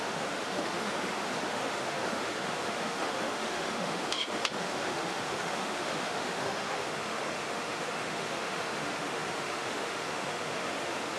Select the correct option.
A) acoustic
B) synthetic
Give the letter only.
B